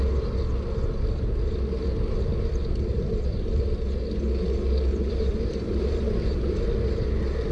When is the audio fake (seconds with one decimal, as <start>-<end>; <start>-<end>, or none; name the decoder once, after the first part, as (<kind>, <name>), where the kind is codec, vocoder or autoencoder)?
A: 2.9-3.6 (vocoder, BigVGAN v2); 4.9-6.6